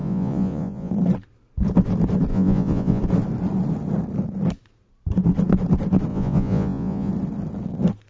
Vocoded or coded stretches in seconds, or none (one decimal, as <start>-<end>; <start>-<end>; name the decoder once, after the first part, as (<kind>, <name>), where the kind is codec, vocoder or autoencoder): 0.0-0.9 (vocoder, Vocos); 2.3-3.0; 6.1-7.1